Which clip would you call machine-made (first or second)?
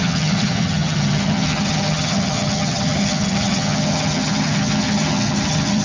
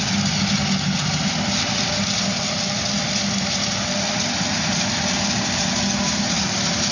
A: first